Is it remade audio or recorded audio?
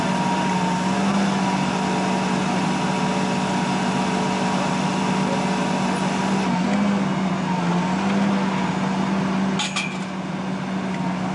recorded